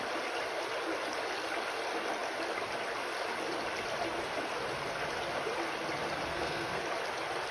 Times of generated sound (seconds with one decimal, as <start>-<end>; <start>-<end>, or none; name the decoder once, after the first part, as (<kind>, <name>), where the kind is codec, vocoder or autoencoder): 6.3-6.8 (codec, SNAC)